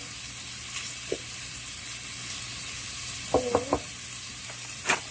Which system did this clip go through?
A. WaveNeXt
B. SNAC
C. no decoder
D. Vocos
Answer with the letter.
C